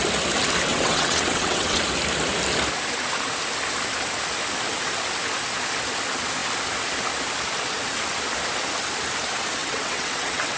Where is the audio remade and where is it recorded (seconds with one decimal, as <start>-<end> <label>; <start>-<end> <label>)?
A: 0.0-0.7 recorded; 0.7-1.8 remade; 1.8-9.6 recorded; 9.6-10.6 remade